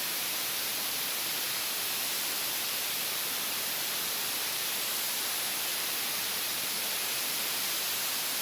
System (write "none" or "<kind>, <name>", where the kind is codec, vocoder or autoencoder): vocoder, BigVGAN v2